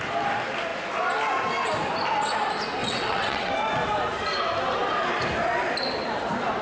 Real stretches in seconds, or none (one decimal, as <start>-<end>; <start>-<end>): 0.0-2.8; 3.5-6.6